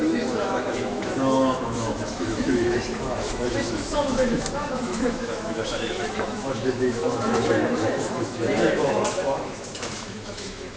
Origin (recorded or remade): remade